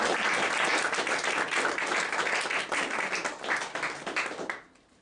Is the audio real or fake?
real